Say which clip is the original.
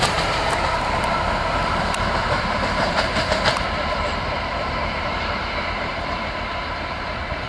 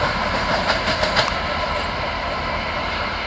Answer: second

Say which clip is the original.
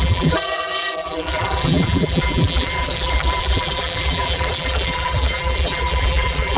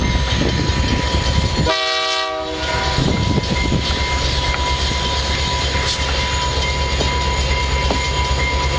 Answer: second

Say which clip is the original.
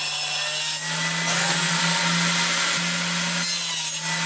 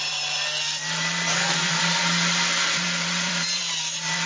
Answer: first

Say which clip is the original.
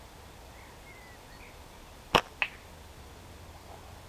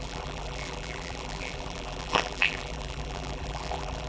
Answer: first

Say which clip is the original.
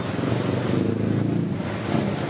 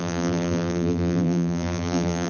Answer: first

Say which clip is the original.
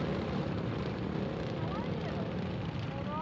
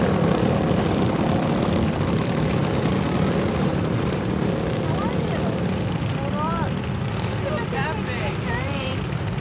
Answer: first